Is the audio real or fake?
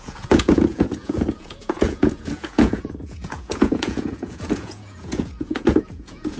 fake